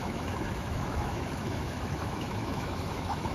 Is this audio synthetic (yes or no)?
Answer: yes